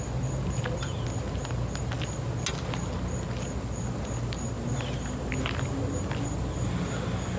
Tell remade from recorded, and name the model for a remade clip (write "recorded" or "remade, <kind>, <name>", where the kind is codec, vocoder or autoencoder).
recorded